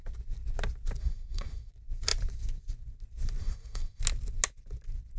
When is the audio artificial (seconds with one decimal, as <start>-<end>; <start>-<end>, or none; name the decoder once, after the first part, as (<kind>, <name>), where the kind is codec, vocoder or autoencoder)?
1.0-1.7 (codec, SNAC); 3.4-4.0